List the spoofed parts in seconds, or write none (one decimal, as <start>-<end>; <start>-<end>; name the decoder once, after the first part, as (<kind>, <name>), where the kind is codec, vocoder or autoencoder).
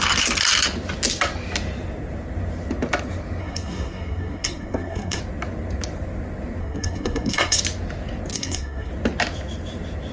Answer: 3.4-5.2 (codec, SNAC); 6.6-7.6; 8.3-8.9